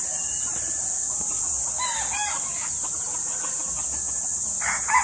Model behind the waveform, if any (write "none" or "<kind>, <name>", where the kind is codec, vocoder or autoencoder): none